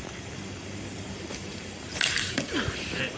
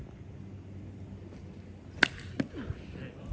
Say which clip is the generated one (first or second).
first